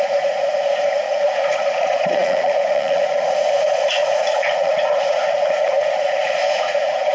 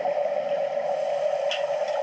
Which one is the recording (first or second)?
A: second